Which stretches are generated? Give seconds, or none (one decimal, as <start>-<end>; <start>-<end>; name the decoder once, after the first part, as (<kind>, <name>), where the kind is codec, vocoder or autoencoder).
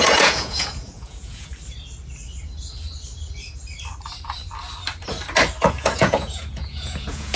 0.0-1.5 (vocoder, Vocos); 5.7-7.4